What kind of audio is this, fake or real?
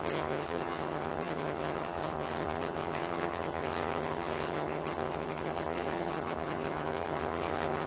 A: fake